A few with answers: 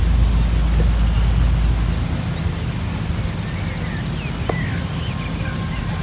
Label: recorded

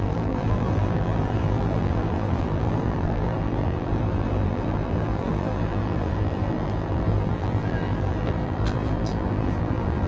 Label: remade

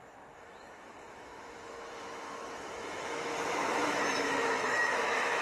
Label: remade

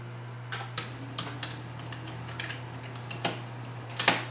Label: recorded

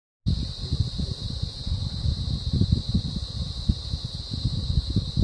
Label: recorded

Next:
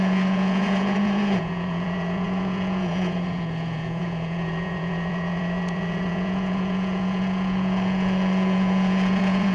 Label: remade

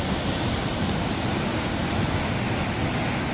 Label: recorded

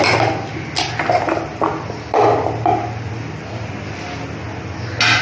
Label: recorded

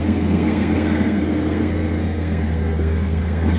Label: remade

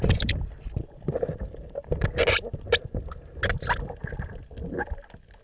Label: recorded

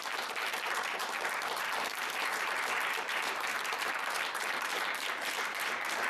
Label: remade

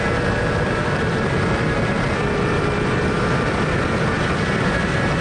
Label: remade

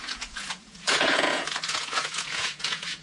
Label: remade